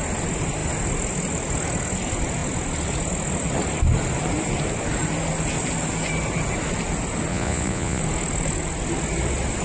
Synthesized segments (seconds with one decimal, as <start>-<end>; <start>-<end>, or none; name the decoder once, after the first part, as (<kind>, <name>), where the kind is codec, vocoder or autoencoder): 7.3-8.0 (vocoder, Vocos)